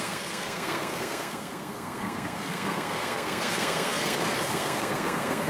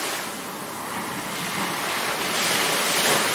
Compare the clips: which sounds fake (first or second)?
first